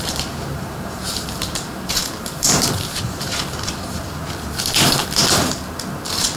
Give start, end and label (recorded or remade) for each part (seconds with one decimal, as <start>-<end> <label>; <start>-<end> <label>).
0.0-4.0 remade; 4.0-6.4 recorded

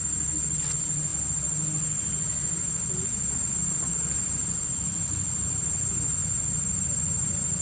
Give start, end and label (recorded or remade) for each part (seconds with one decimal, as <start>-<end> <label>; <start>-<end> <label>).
0.0-7.6 recorded

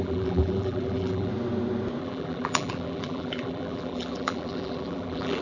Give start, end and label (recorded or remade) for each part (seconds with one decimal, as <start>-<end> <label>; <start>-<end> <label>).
0.0-1.3 remade; 1.3-2.0 recorded; 2.0-5.4 remade

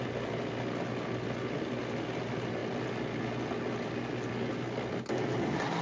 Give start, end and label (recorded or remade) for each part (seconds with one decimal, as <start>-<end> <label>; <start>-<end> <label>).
0.0-5.8 recorded

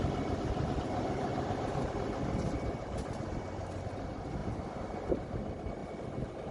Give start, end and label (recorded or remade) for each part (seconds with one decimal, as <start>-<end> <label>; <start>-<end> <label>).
0.0-1.3 recorded; 1.3-1.9 remade; 1.9-5.8 recorded; 5.8-6.5 remade

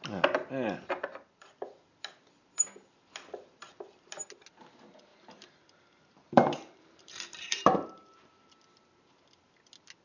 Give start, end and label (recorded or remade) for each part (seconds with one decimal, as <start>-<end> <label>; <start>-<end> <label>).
0.0-5.1 recorded; 5.1-8.5 remade; 8.5-10.0 recorded

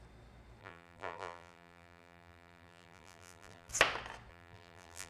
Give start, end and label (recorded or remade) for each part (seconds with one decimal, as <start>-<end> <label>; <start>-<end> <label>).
0.0-0.6 recorded; 0.6-3.7 remade; 3.7-4.3 recorded; 4.3-5.1 remade